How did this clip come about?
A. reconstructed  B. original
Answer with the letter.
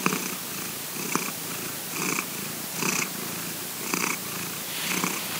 B